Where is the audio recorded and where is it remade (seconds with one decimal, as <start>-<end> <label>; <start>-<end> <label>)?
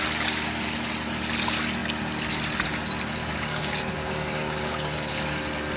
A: 0.0-3.2 recorded; 3.2-5.1 remade; 5.1-5.8 recorded